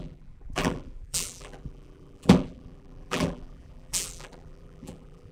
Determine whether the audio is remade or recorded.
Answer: remade